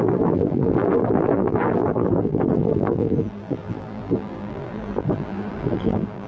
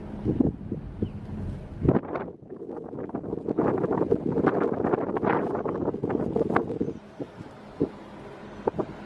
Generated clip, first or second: first